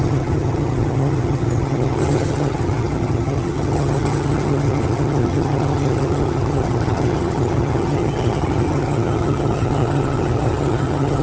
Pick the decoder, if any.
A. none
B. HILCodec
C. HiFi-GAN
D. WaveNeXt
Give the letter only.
C